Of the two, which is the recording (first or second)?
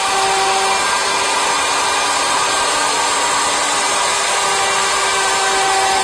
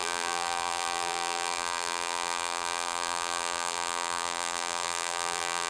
first